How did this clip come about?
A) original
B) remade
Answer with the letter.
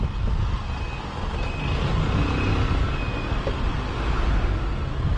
A